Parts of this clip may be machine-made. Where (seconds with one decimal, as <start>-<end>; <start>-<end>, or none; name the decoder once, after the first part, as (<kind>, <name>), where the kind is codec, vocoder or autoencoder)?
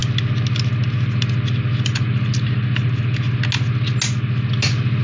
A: none